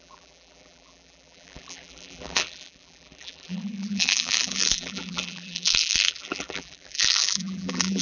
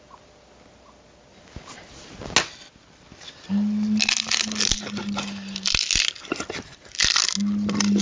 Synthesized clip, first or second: first